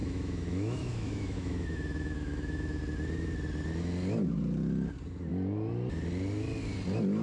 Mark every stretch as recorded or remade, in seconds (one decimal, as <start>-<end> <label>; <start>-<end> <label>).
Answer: 0.0-2.8 remade; 2.8-7.2 recorded